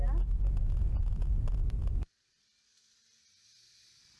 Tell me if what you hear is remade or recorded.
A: recorded